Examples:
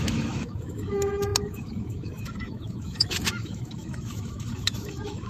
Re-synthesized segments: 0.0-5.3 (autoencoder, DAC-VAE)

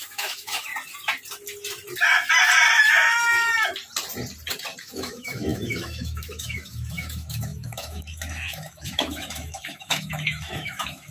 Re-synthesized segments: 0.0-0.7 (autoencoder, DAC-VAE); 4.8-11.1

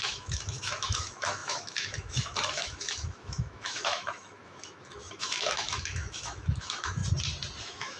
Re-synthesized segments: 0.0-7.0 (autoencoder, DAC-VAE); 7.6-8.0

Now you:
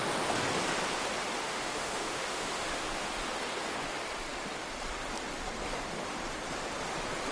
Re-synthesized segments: 1.4-3.1 (autoencoder, DAC-VAE)